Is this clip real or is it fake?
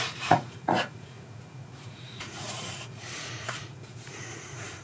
fake